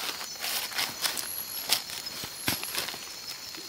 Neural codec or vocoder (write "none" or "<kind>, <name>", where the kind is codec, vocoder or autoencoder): none